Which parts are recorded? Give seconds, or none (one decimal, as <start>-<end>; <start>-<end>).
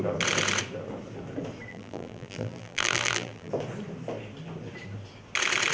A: 0.0-1.7; 3.5-5.7